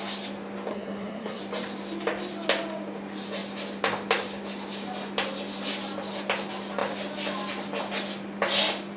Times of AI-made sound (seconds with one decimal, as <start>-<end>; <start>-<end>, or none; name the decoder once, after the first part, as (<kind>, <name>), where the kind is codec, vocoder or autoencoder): 0.7-1.4 (codec, SNAC)